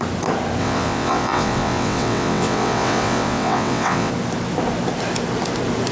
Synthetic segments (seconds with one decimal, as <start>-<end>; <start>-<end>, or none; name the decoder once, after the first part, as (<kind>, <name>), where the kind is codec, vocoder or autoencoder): 0.6-4.1 (vocoder, WaveNeXt)